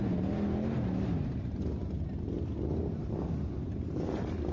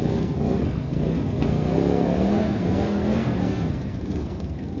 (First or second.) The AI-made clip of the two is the second